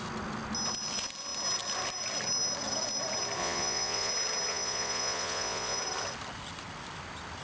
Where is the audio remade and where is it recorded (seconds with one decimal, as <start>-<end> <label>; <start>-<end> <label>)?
0.0-3.4 recorded; 3.4-4.1 remade; 4.1-4.5 recorded; 4.5-5.8 remade; 5.8-7.4 recorded